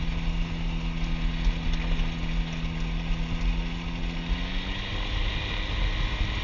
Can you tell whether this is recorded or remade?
recorded